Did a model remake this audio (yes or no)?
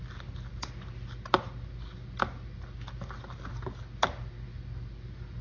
no